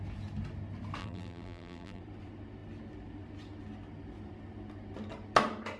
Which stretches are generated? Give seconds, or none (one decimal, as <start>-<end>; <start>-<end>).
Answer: 1.0-2.0